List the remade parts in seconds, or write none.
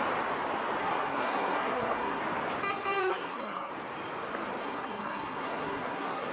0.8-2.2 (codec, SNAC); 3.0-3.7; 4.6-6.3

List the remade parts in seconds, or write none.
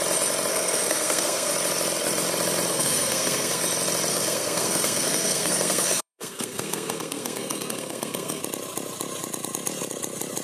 0.5-1.5 (codec, SNAC); 2.7-3.6; 4.1-8.4